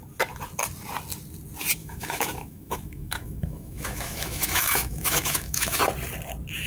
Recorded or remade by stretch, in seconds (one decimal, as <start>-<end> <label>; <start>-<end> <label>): 0.0-1.8 recorded; 1.8-5.8 remade; 5.8-6.7 recorded